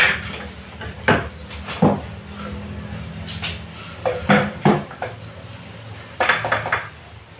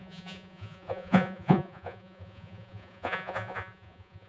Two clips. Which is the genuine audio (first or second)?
first